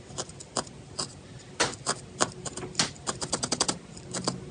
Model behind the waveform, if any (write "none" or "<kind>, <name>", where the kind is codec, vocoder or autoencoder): none